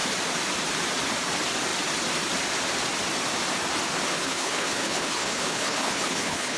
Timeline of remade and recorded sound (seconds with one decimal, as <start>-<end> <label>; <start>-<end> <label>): 0.0-4.1 recorded; 4.1-6.6 remade